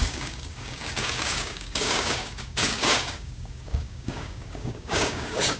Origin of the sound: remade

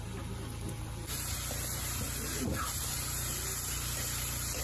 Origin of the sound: recorded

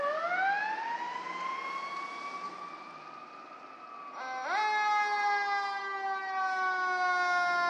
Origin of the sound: recorded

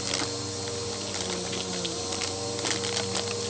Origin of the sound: recorded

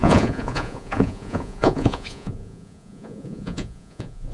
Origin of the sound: remade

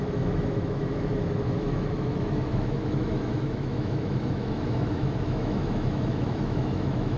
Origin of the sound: remade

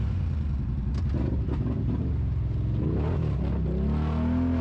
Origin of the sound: recorded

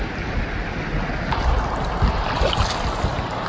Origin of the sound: recorded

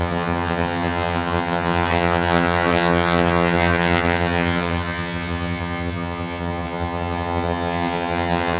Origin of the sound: remade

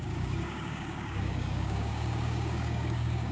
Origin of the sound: remade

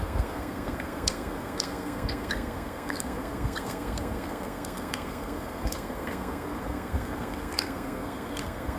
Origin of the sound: remade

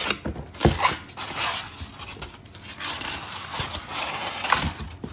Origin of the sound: recorded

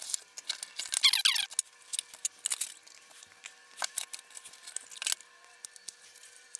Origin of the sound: recorded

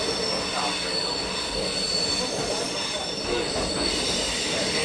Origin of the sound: recorded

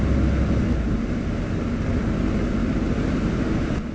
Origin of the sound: recorded